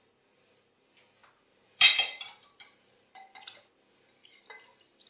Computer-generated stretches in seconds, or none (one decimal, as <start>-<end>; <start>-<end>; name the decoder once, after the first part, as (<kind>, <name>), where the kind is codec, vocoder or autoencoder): 1.2-3.7 (vocoder, BigVGAN v2)